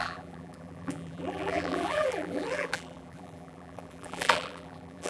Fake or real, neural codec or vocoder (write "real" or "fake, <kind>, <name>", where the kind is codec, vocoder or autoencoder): fake, vocoder, BigVGAN v2